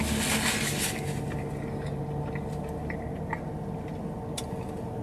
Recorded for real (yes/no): yes